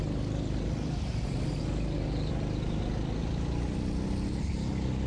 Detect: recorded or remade recorded